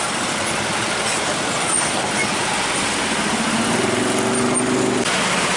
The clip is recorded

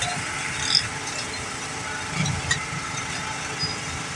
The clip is recorded